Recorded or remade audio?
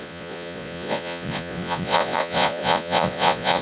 remade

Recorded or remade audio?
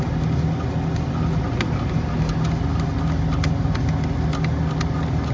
recorded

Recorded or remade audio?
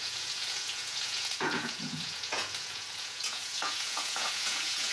remade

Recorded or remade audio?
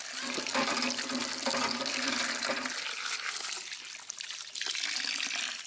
recorded